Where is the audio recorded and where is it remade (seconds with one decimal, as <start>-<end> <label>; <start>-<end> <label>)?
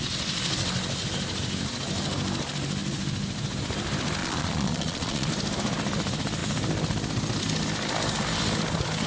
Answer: 0.0-4.2 recorded; 4.2-5.3 remade; 5.3-9.1 recorded